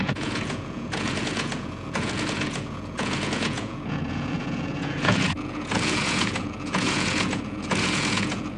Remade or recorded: remade